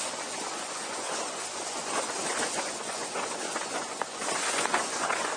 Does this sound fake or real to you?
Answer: fake